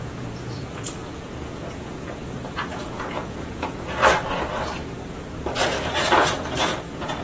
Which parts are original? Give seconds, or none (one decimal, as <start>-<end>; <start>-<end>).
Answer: 4.0-5.9